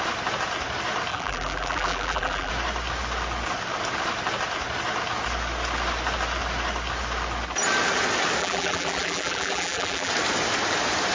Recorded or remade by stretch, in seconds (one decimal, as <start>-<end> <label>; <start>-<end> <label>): 0.0-1.1 recorded; 1.1-2.5 remade; 2.5-8.4 recorded; 8.4-10.1 remade; 10.1-11.1 recorded